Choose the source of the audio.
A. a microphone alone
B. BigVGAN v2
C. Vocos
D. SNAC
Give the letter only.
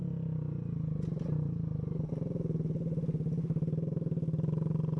A